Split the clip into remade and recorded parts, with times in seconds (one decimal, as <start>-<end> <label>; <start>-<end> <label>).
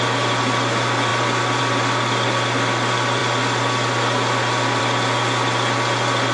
0.0-6.3 recorded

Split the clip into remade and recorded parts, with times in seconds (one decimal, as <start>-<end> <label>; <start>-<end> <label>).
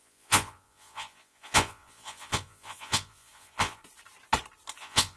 0.0-3.8 remade; 3.8-4.8 recorded; 4.8-5.2 remade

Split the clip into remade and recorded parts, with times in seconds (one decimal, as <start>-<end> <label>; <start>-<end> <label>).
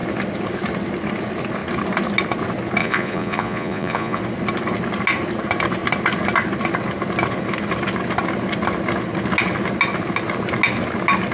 0.0-2.8 recorded; 2.8-4.2 remade; 4.2-11.3 recorded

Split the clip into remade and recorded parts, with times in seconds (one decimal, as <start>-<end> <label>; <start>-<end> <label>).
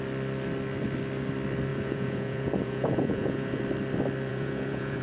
0.0-1.7 recorded; 1.7-3.6 remade; 3.6-4.3 recorded; 4.3-5.0 remade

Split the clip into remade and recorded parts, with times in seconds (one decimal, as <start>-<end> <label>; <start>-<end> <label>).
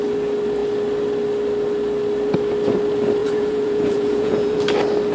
0.0-3.2 recorded; 3.2-4.6 remade; 4.6-5.1 recorded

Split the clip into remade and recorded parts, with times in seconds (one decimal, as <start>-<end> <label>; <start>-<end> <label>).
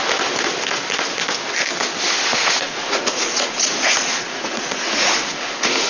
0.0-2.3 recorded; 2.3-5.9 remade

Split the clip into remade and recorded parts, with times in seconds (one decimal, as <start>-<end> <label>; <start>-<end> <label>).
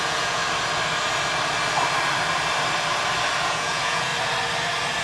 0.0-0.4 remade; 0.4-3.4 recorded; 3.4-4.1 remade; 4.1-5.0 recorded